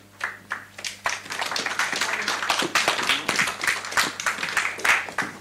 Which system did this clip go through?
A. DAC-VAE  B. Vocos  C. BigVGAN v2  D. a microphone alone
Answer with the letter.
D